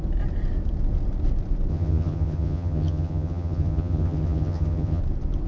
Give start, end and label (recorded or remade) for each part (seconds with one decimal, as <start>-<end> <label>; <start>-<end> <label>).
0.0-1.7 recorded; 1.7-5.0 remade; 5.0-5.5 recorded